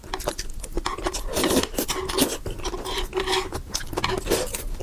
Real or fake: real